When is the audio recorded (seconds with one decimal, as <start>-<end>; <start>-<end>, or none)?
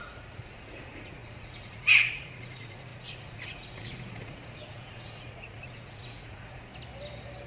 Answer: 6.7-7.5